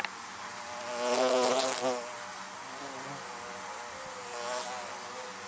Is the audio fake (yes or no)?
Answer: no